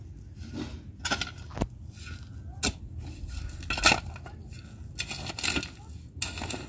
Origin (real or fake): real